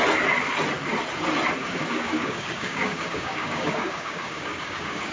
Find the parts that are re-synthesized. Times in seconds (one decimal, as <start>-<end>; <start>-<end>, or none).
1.6-5.1